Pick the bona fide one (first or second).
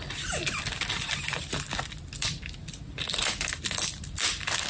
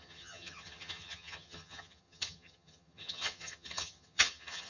first